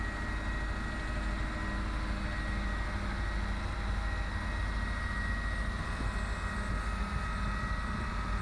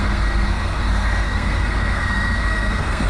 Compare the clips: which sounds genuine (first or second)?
first